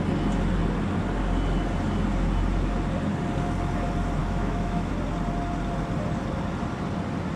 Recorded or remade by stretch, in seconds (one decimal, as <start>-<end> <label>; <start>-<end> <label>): 0.0-4.2 recorded; 4.2-4.9 remade; 4.9-7.4 recorded